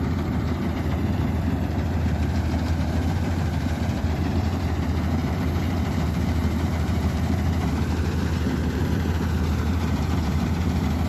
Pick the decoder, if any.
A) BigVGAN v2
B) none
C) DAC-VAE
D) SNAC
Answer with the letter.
A